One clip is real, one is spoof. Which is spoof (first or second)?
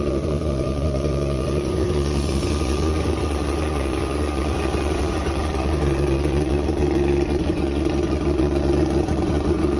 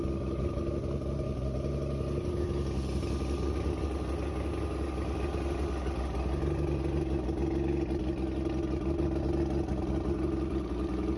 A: first